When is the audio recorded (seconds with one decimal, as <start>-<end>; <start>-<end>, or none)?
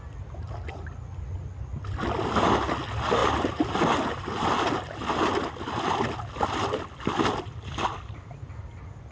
0.0-9.1